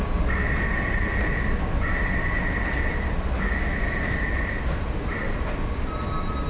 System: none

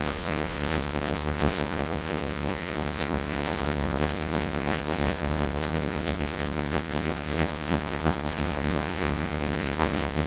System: vocoder, Vocos